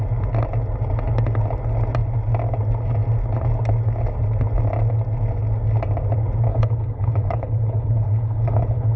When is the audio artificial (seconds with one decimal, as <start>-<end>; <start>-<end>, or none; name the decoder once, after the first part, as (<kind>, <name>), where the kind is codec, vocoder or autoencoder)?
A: 6.5-9.0 (codec, HILCodec)